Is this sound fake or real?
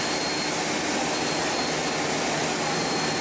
real